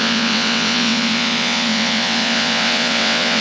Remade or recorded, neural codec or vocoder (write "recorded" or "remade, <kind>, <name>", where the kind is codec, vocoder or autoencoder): remade, vocoder, WaveNeXt